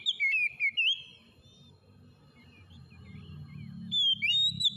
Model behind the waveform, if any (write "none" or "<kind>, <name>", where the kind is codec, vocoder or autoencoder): none